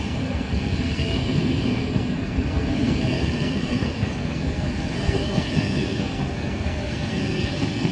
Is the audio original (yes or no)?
no